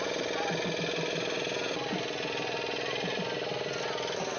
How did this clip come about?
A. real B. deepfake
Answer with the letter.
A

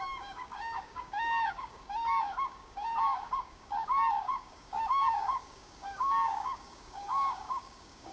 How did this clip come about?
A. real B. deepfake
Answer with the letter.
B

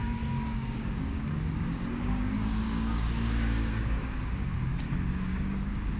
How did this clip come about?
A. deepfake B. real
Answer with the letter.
A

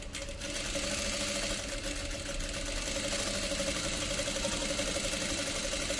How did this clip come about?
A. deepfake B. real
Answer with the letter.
B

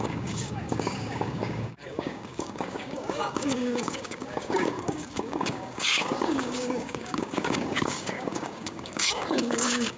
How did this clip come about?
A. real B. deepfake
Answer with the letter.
B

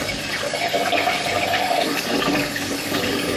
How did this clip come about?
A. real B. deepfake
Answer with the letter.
B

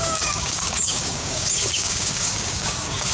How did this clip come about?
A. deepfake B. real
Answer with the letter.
A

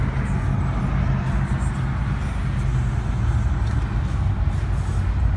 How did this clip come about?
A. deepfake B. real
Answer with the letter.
B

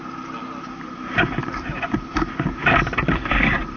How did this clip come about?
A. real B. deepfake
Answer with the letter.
A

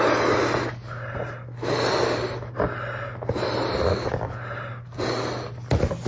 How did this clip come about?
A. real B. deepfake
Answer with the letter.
A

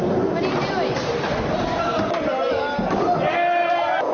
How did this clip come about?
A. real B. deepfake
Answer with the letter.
A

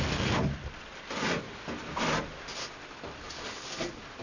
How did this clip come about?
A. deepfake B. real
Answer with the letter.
B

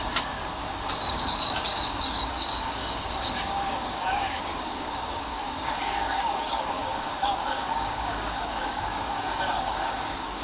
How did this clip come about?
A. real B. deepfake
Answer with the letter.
B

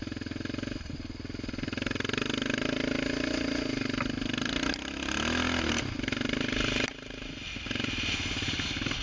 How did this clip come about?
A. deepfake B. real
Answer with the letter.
B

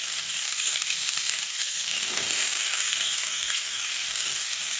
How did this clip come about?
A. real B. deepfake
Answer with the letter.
B